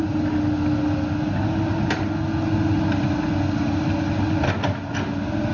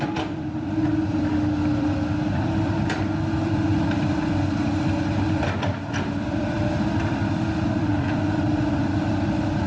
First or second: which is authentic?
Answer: first